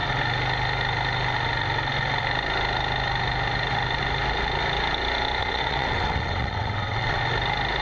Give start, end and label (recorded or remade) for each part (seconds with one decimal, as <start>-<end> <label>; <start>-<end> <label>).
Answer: 0.0-5.4 recorded; 5.4-7.2 remade; 7.2-7.8 recorded